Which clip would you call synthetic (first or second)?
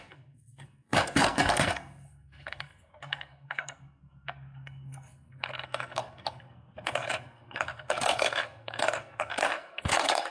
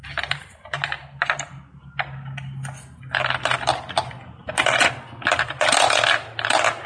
first